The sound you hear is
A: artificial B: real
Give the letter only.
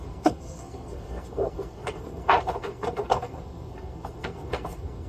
A